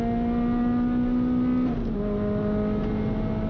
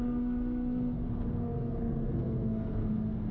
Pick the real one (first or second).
first